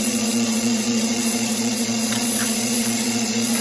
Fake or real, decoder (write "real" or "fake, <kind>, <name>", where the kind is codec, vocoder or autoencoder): fake, vocoder, Vocos